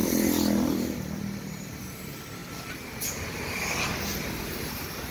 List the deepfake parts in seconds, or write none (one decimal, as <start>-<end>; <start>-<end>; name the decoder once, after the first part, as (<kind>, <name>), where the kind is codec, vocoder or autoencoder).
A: 4.5-5.1 (vocoder, BigVGAN v2)